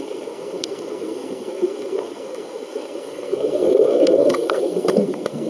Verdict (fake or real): fake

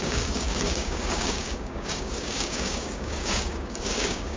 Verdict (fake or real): fake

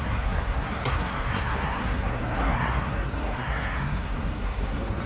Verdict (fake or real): fake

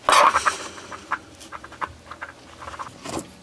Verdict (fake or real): real